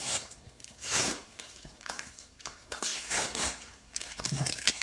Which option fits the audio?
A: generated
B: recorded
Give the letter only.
A